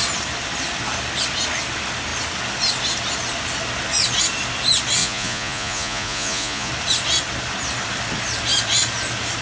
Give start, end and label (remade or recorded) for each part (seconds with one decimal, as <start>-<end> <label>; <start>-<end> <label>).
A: 0.0-5.0 recorded; 5.0-6.7 remade; 6.7-9.4 recorded